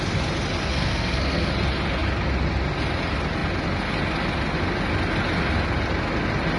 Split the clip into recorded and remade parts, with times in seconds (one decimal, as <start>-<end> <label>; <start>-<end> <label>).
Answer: 0.0-0.7 recorded; 0.7-1.5 remade; 1.5-6.6 recorded